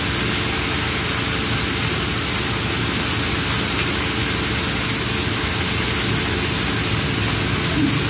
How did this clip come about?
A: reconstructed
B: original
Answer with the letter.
B